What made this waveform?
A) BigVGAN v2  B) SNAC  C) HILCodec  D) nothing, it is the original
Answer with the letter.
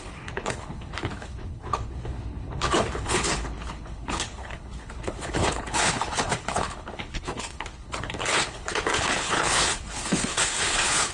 C